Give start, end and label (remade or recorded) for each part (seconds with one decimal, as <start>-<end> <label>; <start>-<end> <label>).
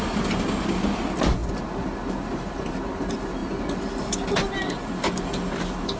0.0-6.0 recorded